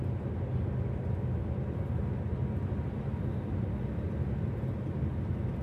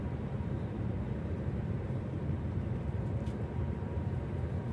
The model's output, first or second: second